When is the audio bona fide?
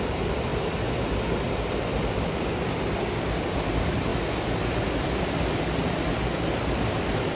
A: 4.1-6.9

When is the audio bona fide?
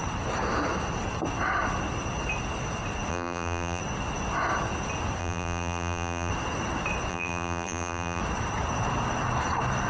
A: 0.0-3.1; 3.8-5.2; 6.3-7.1; 8.2-9.9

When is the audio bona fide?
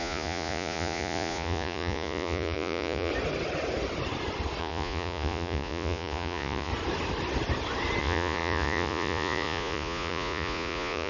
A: 3.1-4.6; 6.7-8.0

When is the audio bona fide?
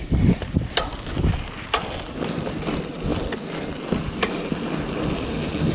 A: 0.0-5.7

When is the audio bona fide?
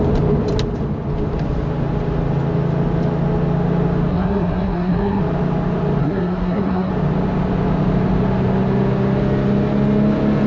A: 0.0-4.1; 5.2-6.0; 6.9-10.5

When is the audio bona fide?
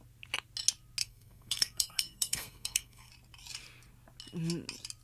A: 0.0-1.0; 3.1-5.0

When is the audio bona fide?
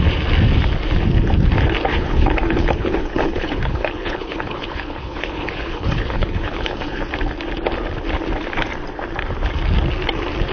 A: 0.0-1.9; 7.1-10.5